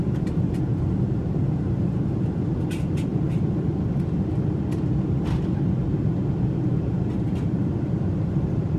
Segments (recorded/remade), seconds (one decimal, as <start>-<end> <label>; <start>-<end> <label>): 0.0-3.1 remade; 3.1-6.7 recorded; 6.7-8.8 remade